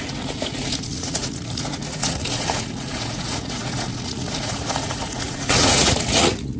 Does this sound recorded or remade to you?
remade